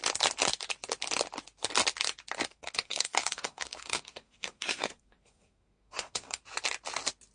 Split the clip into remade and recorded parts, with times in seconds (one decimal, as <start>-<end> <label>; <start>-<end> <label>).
0.0-2.5 recorded; 2.5-6.4 remade; 6.4-7.3 recorded